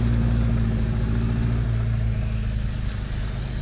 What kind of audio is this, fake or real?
real